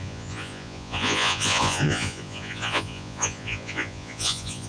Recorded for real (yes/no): no